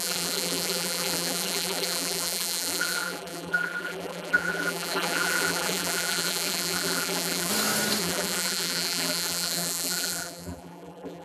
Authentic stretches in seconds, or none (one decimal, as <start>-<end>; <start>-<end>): 7.5-8.0